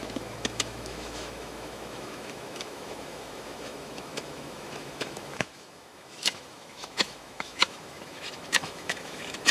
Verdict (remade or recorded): remade